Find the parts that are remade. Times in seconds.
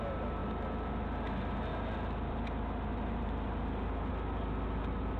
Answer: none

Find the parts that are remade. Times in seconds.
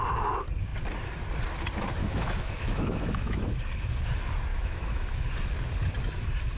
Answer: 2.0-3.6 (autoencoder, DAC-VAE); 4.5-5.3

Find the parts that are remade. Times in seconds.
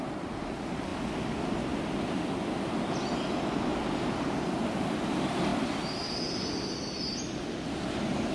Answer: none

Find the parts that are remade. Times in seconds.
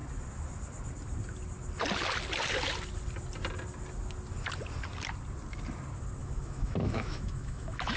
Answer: 6.2-8.0 (autoencoder, DAC-VAE)